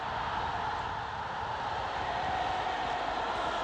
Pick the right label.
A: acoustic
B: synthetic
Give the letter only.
A